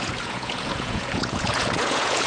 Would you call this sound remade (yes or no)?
yes